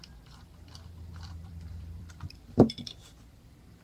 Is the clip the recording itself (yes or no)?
no